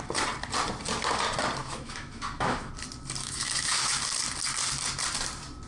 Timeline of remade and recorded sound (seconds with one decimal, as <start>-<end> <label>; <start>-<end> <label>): 0.0-1.6 recorded; 1.6-2.7 remade; 2.7-3.2 recorded; 3.2-4.0 remade; 4.0-5.7 recorded